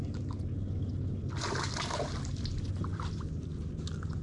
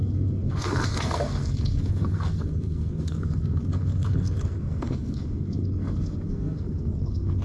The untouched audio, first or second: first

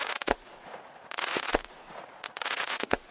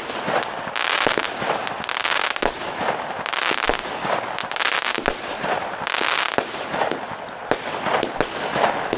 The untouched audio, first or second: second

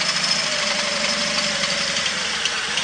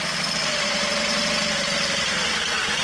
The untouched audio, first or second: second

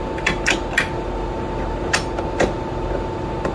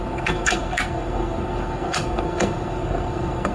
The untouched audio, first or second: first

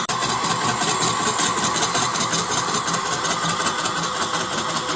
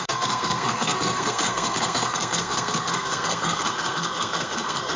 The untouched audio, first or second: first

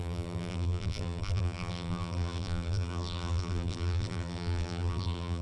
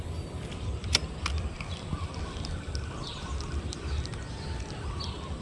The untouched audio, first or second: second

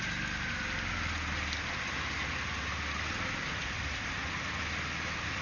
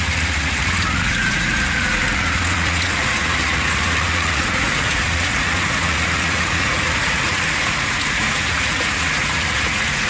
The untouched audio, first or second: first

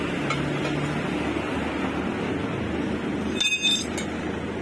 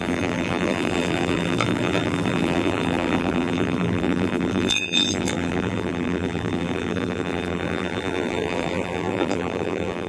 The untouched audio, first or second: first